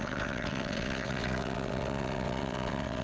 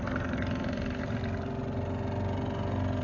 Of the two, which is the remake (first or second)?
first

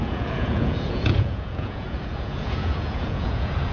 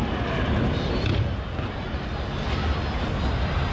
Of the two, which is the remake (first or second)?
first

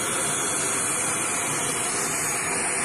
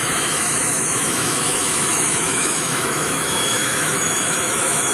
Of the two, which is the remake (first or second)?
second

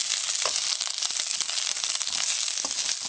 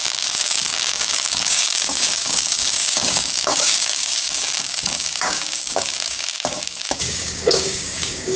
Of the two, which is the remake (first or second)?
second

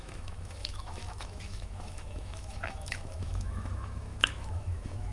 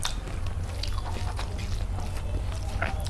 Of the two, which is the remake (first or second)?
first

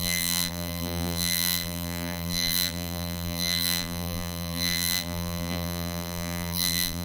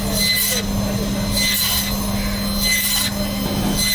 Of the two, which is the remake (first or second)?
first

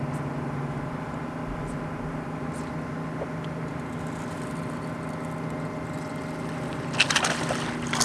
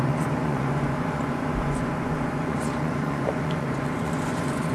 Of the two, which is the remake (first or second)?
second